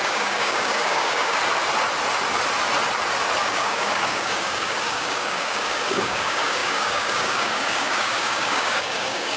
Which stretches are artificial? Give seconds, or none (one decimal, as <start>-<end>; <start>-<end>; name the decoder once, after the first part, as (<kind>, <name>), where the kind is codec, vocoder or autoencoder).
0.0-1.4 (codec, DAC); 3.4-9.4